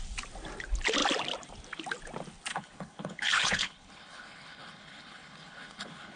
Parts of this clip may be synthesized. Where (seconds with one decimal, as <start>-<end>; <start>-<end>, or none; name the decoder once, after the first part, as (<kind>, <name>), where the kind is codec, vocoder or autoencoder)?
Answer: 2.5-6.2 (codec, HILCodec)